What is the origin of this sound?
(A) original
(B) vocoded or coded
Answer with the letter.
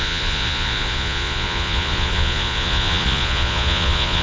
B